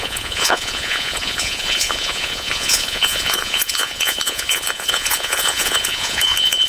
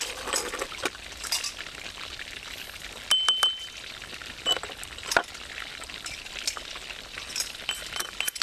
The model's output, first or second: first